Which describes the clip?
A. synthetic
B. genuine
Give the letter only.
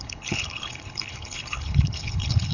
A